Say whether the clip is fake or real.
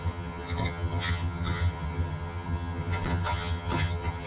fake